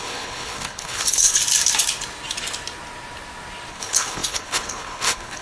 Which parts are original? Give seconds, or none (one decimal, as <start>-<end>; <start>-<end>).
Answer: 1.4-3.7